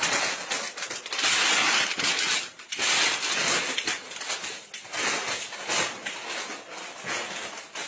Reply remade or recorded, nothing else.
recorded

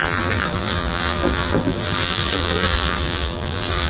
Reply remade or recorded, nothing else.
remade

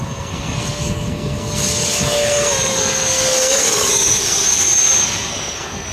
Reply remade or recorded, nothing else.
remade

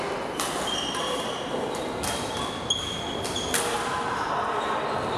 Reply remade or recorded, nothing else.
recorded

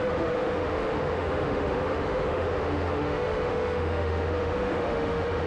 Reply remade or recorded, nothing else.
remade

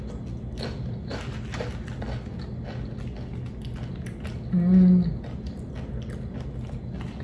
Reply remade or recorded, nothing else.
recorded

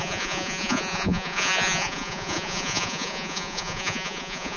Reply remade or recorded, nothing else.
remade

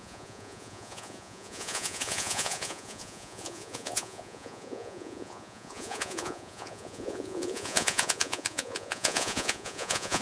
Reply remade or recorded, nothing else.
remade